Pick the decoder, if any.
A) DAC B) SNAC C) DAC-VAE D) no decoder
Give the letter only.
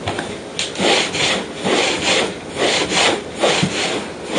D